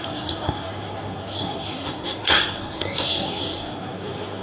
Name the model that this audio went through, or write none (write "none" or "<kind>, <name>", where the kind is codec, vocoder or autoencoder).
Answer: codec, SNAC